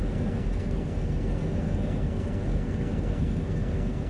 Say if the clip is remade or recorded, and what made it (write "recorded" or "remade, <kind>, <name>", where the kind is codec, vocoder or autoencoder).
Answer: remade, codec, SNAC